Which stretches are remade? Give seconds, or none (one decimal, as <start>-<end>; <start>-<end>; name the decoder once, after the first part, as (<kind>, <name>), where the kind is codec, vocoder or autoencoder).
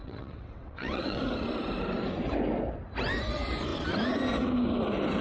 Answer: 0.0-1.2 (vocoder, WaveNeXt)